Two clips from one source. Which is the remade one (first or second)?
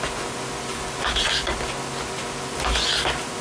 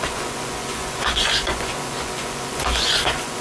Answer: second